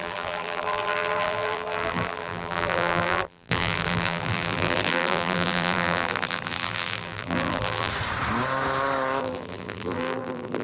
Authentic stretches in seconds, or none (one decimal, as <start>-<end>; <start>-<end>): 7.9-9.2